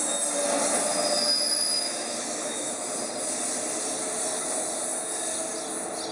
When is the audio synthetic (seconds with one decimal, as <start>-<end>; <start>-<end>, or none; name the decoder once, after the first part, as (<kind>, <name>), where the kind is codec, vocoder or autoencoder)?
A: 1.7-2.7 (autoencoder, DAC-VAE)